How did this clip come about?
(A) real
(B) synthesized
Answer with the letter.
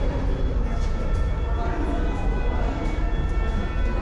A